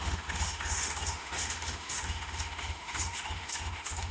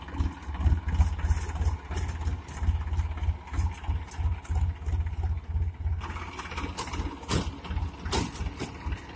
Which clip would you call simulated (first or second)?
first